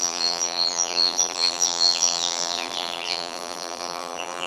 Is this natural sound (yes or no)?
no